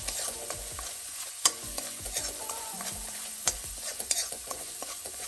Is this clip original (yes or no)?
no